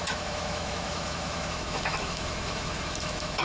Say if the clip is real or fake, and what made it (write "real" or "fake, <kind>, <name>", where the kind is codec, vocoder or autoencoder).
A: fake, autoencoder, DAC-VAE